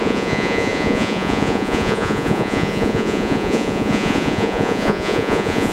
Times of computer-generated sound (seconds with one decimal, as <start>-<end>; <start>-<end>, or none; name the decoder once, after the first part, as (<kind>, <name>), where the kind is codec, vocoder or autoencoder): 0.0-5.7 (vocoder, Vocos)